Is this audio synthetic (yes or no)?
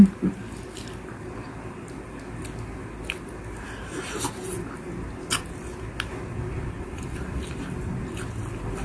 no